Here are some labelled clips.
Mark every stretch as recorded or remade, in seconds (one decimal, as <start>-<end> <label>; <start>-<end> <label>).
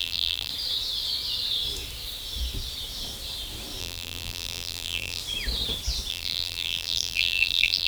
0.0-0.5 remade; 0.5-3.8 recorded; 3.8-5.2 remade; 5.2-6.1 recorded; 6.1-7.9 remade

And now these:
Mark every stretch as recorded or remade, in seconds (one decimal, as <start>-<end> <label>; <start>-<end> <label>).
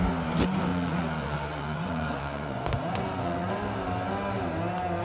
0.0-0.7 recorded; 0.7-3.5 remade; 3.5-5.0 recorded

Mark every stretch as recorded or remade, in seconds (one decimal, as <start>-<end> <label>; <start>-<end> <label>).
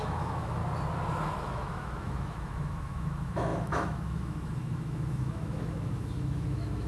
0.0-0.6 remade; 0.6-1.4 recorded; 1.4-6.9 remade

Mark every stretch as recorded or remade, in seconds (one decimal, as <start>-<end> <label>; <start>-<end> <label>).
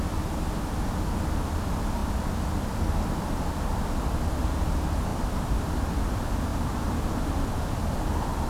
0.0-2.0 recorded; 2.0-2.9 remade; 2.9-5.1 recorded; 5.1-6.1 remade; 6.1-8.5 recorded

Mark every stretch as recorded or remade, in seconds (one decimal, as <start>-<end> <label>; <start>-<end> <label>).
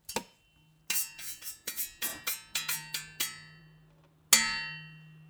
0.0-1.0 recorded; 1.0-1.7 remade; 1.7-5.3 recorded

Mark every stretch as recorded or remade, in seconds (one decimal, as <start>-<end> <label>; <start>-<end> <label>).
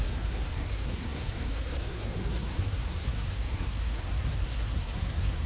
0.0-5.5 remade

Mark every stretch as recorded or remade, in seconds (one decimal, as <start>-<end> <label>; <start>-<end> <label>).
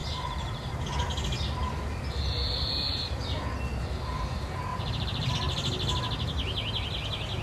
0.0-0.7 remade; 0.7-4.7 recorded; 4.7-5.3 remade; 5.3-7.4 recorded